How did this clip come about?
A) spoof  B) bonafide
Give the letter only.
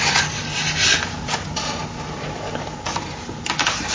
B